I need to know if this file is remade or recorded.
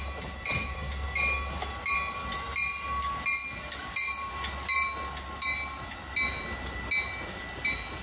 recorded